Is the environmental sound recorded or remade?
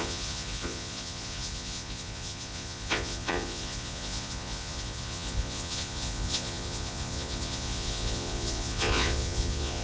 remade